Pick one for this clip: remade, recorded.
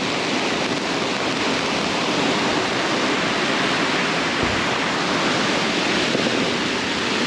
recorded